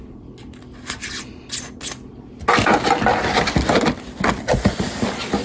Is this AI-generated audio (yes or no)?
no